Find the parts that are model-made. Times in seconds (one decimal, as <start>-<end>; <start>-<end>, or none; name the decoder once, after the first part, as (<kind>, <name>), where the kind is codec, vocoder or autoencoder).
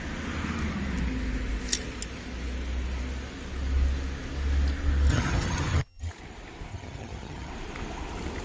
5.1-6.1 (vocoder, HiFi-GAN); 6.7-7.5